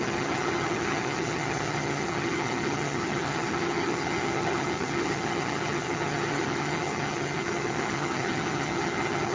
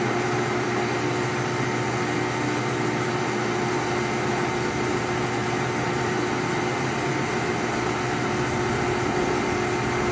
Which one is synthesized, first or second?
first